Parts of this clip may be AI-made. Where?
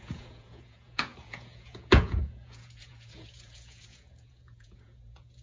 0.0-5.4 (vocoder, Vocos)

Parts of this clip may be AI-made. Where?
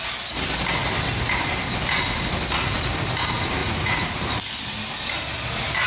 3.6-4.2 (vocoder, Vocos)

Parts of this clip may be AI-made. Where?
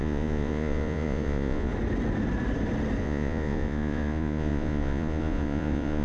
0.0-1.7 (vocoder, Vocos); 3.0-6.0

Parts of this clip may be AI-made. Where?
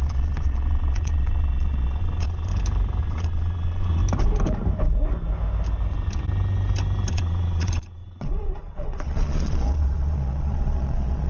0.0-2.5 (vocoder, Vocos); 3.0-4.0; 7.1-11.3